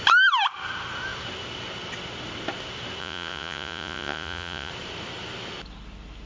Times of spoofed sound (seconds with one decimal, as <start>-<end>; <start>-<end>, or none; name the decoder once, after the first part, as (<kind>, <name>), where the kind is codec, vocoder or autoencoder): 3.0-4.7 (vocoder, Vocos)